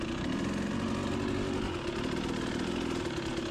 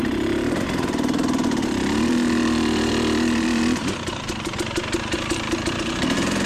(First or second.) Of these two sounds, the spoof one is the second